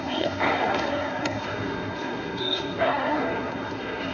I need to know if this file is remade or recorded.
remade